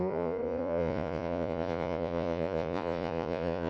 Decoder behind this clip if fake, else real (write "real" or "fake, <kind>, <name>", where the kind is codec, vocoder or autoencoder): fake, vocoder, Vocos